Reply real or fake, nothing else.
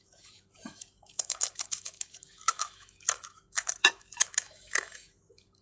fake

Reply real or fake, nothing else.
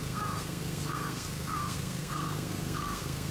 fake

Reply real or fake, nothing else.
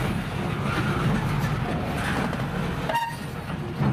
real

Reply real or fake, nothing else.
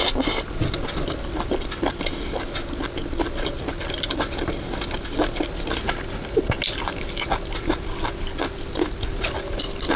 real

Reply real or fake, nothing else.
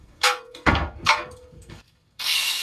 fake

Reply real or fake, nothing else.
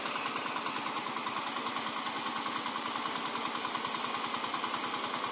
real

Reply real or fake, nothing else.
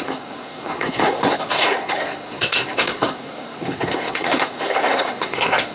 fake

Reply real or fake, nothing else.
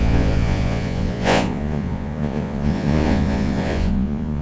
fake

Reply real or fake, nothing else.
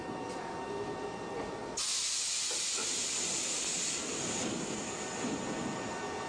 real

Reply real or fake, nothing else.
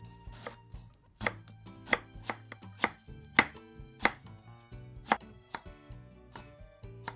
real